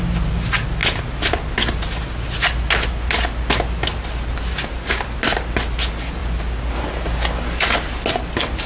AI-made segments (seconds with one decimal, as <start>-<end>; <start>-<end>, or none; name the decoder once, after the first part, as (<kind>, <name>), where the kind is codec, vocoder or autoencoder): none